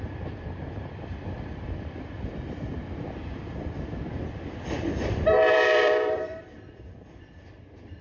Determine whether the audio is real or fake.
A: fake